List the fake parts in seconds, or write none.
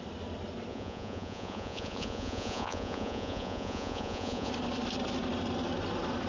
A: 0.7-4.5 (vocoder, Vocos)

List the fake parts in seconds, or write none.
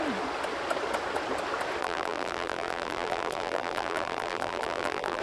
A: 1.8-5.2 (vocoder, BigVGAN v2)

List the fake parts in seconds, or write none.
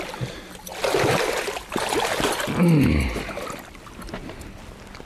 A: none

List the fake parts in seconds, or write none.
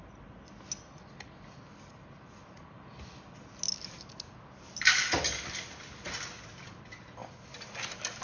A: none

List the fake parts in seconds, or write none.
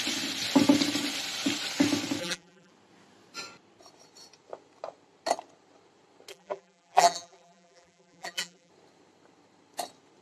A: 2.2-2.7 (vocoder, BigVGAN v2); 6.3-8.7